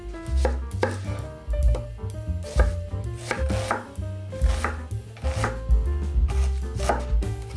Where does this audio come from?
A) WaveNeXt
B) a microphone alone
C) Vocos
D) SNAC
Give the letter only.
B